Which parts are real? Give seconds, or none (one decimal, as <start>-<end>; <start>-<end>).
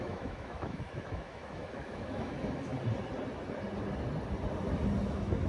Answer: 2.7-5.1